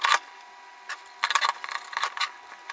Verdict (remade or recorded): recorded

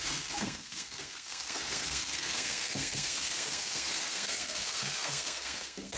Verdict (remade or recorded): remade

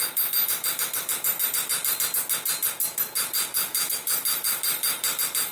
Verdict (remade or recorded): recorded